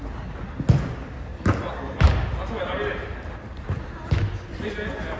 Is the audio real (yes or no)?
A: yes